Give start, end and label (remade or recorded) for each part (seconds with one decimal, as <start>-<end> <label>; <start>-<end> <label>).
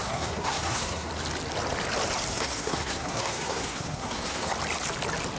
0.0-1.1 remade; 1.1-2.3 recorded; 2.3-4.5 remade; 4.5-5.4 recorded